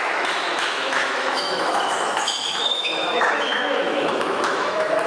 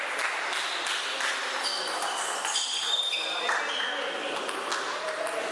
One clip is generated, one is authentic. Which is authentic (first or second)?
second